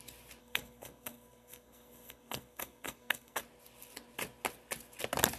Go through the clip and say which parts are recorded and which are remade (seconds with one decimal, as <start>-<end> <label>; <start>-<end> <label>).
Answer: 0.0-0.4 recorded; 0.4-3.4 remade; 3.4-5.4 recorded